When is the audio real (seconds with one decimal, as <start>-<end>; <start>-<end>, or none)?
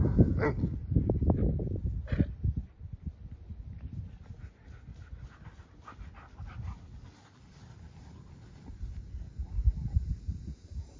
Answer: 0.0-11.0